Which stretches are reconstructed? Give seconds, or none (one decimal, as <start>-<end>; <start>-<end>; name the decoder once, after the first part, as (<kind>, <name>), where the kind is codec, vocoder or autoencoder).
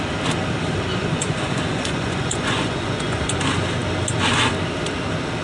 0.9-3.4 (vocoder, Vocos)